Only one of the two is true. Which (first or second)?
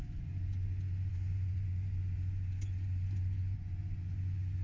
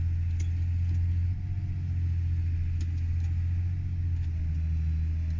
second